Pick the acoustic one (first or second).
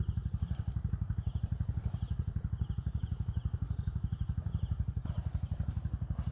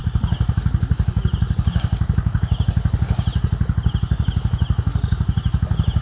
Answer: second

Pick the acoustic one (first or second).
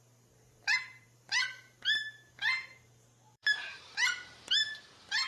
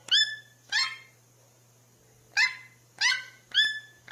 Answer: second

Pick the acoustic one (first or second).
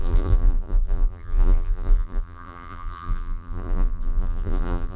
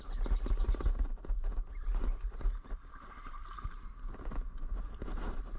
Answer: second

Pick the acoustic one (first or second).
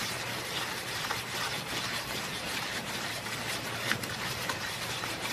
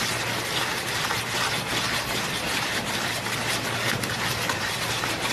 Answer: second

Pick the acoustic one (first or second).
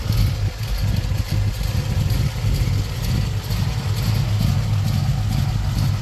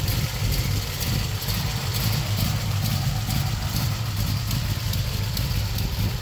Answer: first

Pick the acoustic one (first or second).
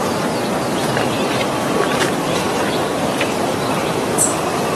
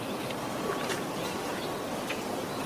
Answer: second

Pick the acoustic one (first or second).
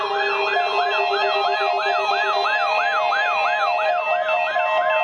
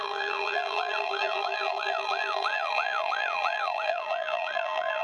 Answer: first